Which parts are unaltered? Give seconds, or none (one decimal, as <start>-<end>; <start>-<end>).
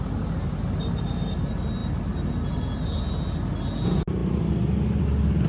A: 0.0-5.5